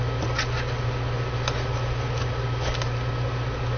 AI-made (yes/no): no